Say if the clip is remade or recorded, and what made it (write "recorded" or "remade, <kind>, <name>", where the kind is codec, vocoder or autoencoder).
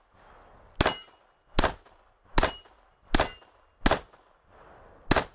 recorded